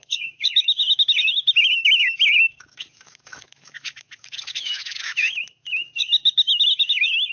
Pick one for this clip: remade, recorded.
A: remade